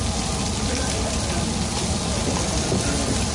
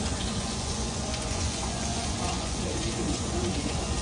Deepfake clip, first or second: second